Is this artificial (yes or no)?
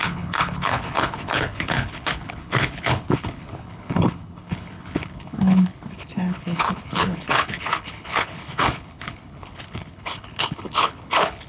yes